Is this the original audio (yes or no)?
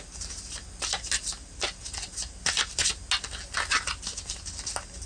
yes